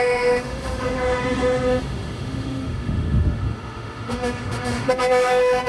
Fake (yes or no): yes